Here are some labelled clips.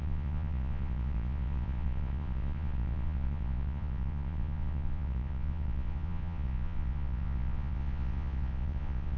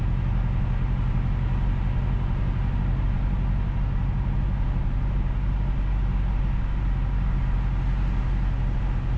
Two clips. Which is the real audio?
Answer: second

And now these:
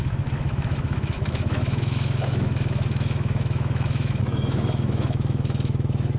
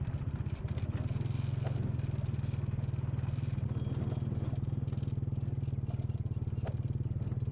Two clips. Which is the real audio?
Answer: second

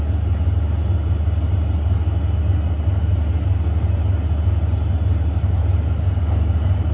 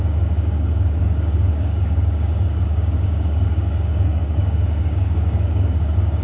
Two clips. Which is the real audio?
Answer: first